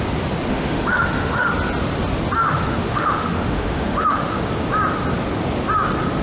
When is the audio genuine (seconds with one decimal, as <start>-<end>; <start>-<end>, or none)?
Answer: 0.0-0.5; 1.5-2.4; 4.5-6.2